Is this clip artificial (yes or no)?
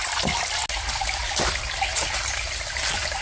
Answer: no